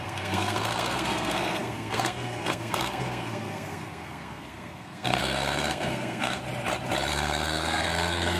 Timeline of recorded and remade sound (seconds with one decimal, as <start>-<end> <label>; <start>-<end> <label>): 0.0-6.4 remade; 6.4-7.1 recorded; 7.1-8.4 remade